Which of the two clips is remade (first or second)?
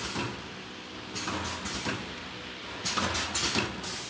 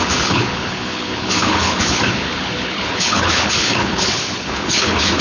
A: second